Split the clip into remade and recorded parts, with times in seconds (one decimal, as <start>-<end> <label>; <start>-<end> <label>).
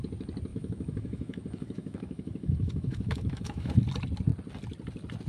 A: 0.0-0.5 recorded; 0.5-3.7 remade; 3.7-5.3 recorded